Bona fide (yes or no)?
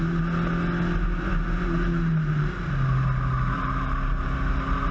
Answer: yes